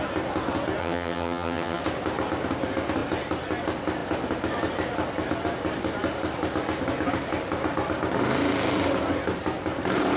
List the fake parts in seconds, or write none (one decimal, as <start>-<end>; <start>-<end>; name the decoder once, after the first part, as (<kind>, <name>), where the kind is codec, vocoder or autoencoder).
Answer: 0.8-1.8 (vocoder, HiFi-GAN)